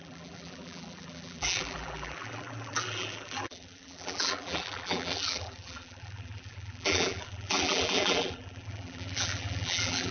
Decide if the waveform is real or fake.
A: fake